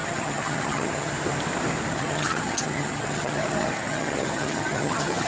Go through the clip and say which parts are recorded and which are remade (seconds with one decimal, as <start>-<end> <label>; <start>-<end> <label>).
0.0-1.1 remade; 1.1-1.9 recorded; 1.9-5.3 remade